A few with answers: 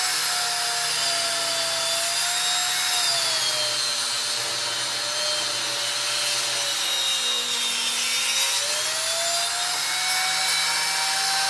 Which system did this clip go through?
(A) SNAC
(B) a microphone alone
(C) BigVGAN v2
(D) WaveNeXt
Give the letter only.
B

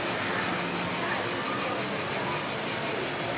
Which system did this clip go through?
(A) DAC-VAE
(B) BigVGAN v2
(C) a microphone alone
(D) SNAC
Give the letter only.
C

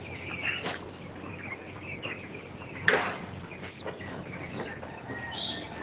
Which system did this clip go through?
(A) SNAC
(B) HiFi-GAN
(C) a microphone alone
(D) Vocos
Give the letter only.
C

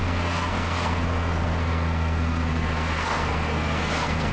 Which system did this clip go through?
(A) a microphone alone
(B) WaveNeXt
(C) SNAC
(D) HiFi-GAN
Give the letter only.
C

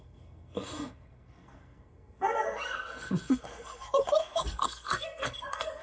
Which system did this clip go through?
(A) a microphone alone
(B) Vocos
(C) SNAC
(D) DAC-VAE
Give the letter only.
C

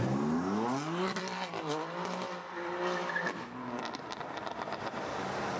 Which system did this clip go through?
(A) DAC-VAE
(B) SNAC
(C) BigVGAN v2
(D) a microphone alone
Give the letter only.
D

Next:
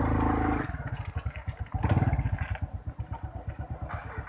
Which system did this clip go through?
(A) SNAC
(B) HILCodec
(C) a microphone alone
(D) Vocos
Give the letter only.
C